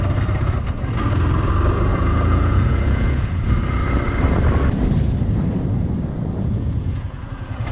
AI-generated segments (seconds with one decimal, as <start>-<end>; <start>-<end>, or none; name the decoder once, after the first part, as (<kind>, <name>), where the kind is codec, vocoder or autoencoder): 1.9-3.4 (vocoder, Vocos); 6.2-7.7